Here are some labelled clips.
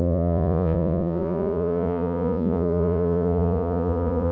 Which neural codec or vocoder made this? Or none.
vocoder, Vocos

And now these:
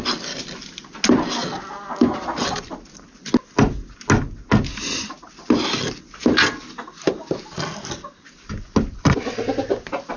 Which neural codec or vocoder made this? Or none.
none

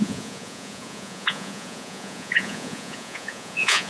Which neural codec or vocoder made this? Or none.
vocoder, Vocos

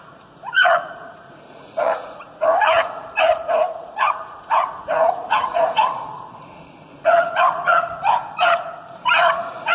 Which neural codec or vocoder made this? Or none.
vocoder, Vocos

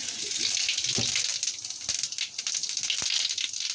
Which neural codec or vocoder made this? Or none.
none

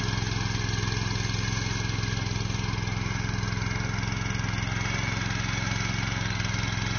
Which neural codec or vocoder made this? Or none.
none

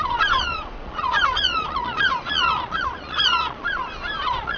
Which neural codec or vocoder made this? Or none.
vocoder, Vocos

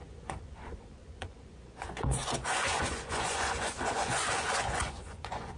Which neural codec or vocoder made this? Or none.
vocoder, Vocos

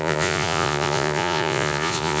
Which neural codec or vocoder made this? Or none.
vocoder, Vocos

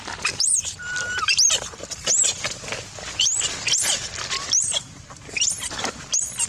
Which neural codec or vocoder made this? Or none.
none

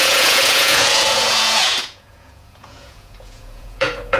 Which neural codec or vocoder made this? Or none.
vocoder, Vocos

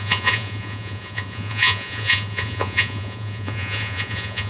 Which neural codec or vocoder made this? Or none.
vocoder, Vocos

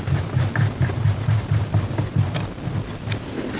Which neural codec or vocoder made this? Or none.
none